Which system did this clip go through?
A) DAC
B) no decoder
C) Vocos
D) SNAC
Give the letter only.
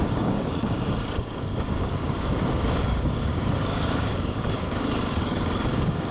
A